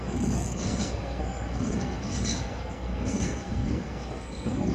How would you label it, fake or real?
fake